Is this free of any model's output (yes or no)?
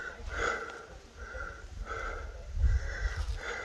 yes